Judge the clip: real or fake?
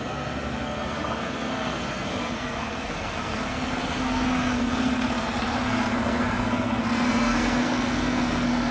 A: fake